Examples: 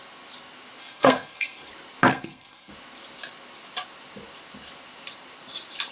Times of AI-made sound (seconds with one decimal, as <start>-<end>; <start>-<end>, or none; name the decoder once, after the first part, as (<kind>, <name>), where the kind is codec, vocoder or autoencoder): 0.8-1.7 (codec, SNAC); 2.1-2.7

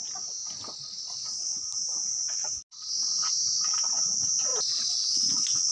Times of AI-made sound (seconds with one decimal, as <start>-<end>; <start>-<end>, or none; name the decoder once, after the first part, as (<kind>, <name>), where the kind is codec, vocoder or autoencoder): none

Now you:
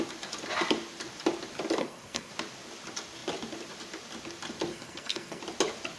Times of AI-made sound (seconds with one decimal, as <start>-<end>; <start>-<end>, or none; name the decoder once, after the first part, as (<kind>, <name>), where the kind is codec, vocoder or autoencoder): 1.8-2.3 (codec, SNAC); 4.7-5.4